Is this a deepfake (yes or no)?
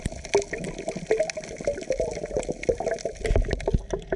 no